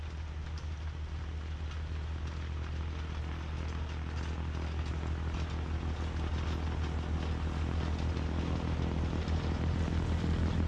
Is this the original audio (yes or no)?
yes